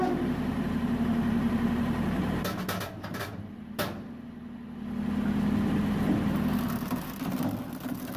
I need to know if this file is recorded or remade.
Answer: recorded